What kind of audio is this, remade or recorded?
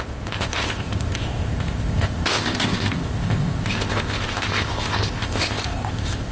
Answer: remade